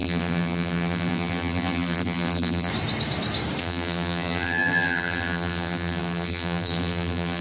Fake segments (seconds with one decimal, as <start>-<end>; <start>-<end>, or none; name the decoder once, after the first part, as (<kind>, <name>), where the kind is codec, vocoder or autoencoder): 0.0-2.7 (vocoder, BigVGAN v2); 3.6-7.4